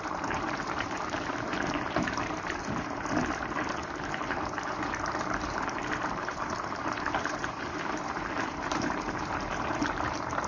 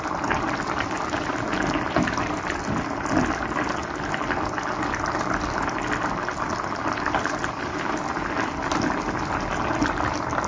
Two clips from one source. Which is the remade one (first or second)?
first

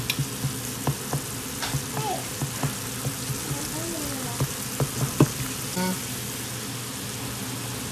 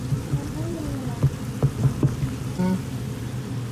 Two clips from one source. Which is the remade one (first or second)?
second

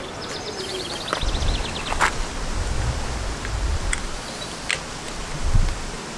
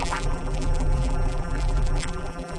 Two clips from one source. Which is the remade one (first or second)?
second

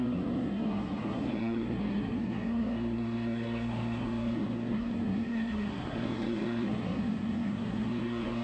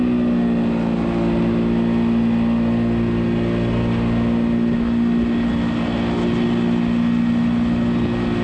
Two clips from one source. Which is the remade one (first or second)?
first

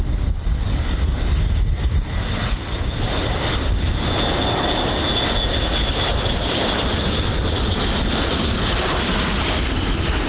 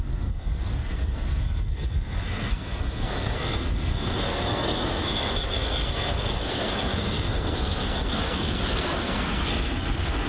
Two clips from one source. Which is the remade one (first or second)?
second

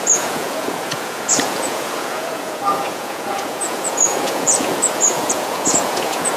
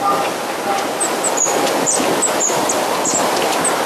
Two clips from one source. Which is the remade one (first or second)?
first